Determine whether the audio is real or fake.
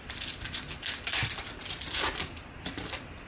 real